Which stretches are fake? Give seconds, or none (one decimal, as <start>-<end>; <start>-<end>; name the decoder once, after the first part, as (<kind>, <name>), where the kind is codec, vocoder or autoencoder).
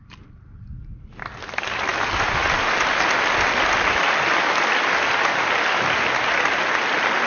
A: none